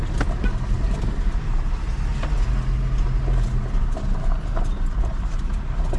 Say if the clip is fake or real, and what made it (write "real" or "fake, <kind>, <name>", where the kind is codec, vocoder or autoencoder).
real